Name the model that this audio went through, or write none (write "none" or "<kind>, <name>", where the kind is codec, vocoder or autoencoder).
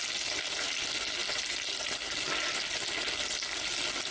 none